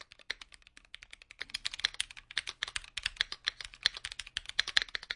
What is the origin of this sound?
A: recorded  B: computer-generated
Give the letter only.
A